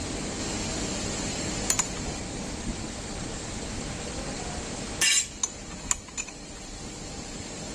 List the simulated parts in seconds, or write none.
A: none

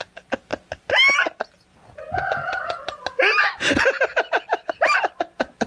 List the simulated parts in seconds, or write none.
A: none

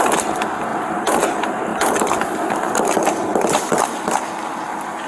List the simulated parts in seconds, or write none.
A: 0.7-1.2 (vocoder, BigVGAN v2); 1.7-4.1

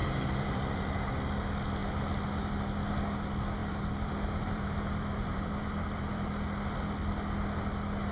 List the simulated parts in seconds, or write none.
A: 0.0-0.8 (vocoder, BigVGAN v2); 3.6-6.3

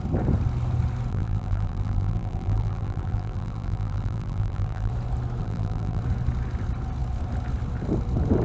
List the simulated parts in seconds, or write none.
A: 1.1-4.9 (vocoder, BigVGAN v2); 5.4-6.0